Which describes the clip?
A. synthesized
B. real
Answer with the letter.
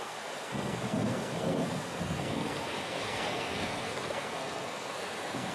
A